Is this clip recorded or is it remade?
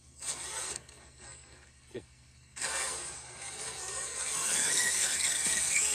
remade